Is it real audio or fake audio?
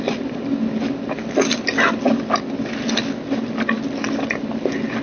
real